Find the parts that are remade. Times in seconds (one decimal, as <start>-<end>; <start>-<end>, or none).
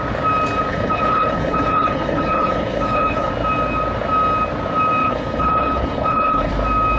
0.7-3.3; 5.0-6.5